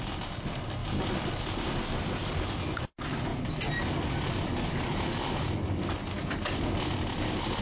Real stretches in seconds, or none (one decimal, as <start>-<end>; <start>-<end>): 0.0-7.6